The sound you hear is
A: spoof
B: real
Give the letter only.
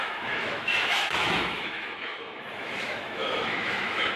A